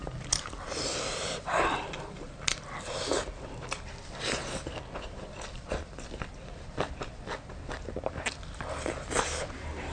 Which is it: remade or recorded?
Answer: remade